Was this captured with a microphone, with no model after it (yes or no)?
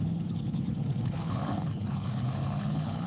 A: no